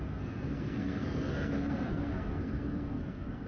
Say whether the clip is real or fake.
fake